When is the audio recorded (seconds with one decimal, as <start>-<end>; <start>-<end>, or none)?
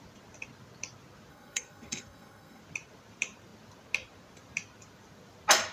0.0-1.3; 2.6-5.7